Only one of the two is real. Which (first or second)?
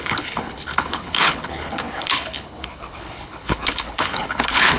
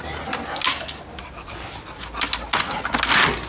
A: second